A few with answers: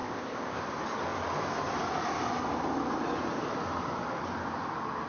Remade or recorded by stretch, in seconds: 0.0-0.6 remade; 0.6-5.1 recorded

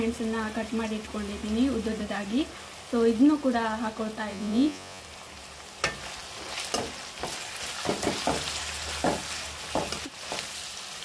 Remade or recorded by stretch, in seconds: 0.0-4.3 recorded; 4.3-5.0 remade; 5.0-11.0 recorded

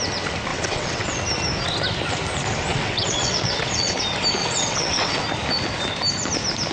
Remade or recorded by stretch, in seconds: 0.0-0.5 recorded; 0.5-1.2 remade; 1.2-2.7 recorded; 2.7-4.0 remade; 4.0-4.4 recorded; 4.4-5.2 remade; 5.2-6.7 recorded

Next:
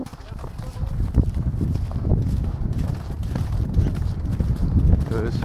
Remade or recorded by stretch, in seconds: 0.0-2.1 remade; 2.1-3.8 recorded; 3.8-5.4 remade